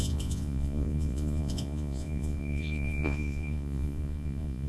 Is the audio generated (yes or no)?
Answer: yes